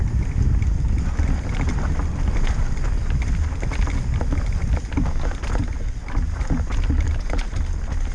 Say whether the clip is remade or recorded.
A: recorded